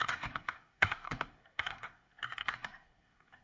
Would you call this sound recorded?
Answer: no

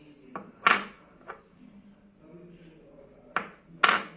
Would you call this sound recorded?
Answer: yes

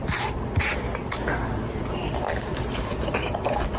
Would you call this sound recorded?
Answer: yes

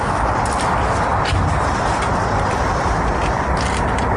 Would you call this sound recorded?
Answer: yes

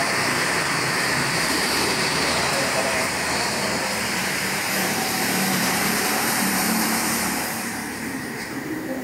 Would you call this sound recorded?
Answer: no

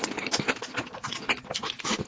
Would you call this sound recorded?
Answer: yes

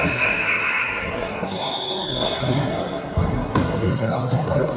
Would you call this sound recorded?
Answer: no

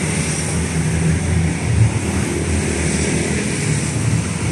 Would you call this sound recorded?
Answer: yes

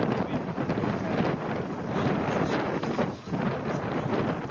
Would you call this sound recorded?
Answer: yes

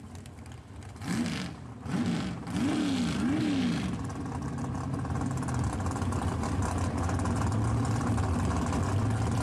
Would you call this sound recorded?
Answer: yes